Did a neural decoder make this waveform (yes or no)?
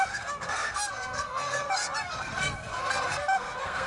yes